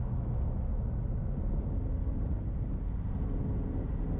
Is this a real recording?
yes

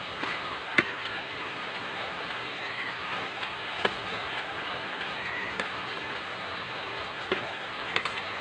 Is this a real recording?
no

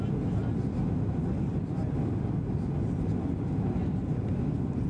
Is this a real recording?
yes